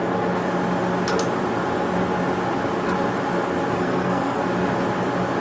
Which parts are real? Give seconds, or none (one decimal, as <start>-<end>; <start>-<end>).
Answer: 0.0-3.8; 4.4-5.4